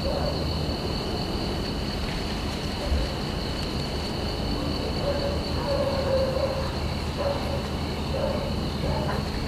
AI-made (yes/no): no